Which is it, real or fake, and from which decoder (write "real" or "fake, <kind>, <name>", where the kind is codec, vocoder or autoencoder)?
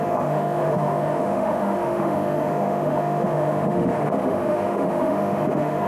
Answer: fake, autoencoder, DAC-VAE